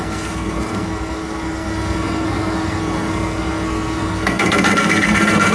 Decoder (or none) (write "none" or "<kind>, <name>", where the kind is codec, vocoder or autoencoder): codec, SNAC